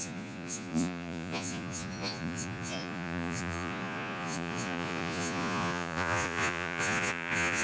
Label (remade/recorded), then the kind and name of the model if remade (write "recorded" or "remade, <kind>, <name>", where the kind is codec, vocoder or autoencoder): remade, vocoder, Vocos